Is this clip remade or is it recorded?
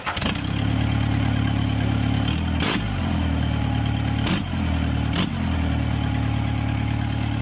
recorded